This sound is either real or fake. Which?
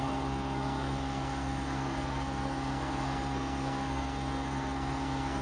fake